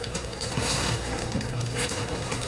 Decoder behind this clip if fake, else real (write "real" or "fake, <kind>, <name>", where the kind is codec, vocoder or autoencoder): fake, codec, SNAC